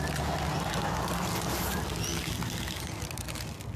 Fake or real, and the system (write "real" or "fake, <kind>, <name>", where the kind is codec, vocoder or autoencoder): real